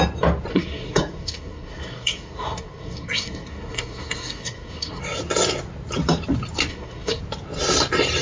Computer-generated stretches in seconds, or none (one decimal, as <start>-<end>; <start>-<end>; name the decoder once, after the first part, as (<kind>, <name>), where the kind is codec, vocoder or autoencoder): 0.5-5.0 (codec, SNAC); 6.7-7.2